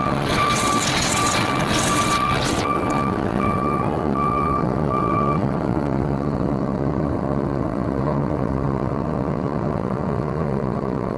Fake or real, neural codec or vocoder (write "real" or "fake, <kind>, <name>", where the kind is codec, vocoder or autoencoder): fake, vocoder, WaveNeXt